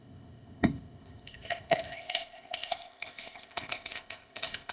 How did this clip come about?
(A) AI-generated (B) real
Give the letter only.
A